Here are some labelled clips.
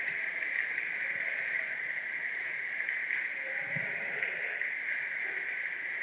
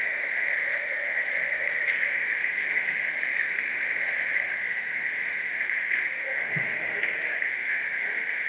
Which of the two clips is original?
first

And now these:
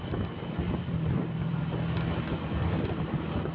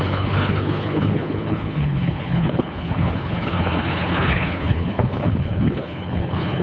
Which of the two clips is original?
first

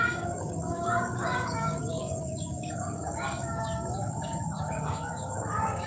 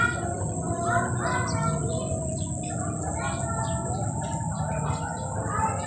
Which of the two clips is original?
second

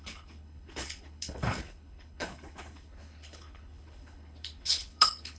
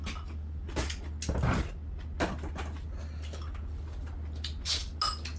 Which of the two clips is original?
second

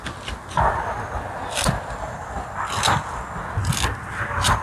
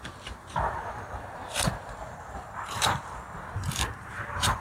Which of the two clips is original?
first